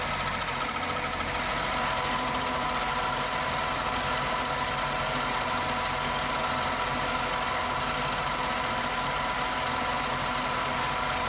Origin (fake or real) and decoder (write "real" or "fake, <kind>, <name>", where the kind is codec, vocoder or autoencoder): real